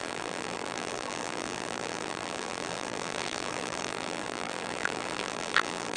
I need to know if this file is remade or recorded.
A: remade